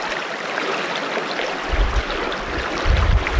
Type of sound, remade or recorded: recorded